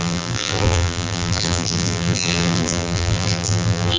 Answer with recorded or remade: remade